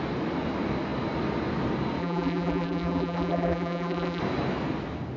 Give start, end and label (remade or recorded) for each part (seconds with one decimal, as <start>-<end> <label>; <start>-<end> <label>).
0.0-2.0 recorded; 2.0-4.2 remade; 4.2-5.2 recorded